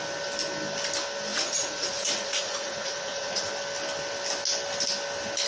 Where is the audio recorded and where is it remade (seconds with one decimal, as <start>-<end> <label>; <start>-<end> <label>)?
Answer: 0.0-1.3 recorded; 1.3-3.5 remade; 3.5-5.5 recorded